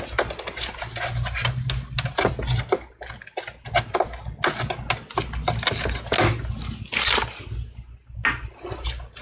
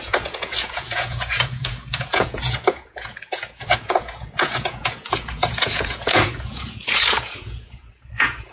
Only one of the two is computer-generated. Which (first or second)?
second